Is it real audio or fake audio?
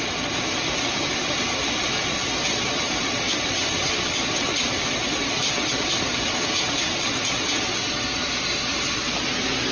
real